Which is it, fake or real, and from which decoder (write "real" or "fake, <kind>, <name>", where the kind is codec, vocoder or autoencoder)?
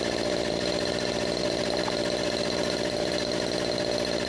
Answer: real